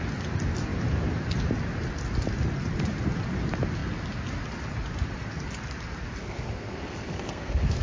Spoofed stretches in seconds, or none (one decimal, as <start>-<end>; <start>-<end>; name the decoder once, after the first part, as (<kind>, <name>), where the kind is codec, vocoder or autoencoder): 6.2-7.8 (codec, SNAC)